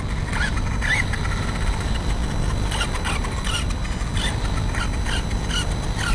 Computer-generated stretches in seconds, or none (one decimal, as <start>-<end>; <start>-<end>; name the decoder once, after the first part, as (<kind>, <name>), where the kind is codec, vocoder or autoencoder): none